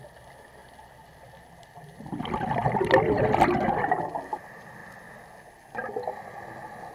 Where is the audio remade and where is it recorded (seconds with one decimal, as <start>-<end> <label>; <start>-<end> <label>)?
0.0-6.9 recorded